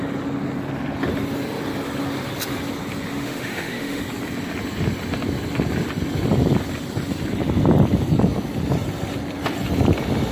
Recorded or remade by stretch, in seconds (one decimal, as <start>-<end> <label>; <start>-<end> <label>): 0.0-3.1 recorded; 3.1-4.0 remade; 4.0-10.3 recorded